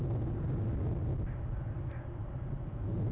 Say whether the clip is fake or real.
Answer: real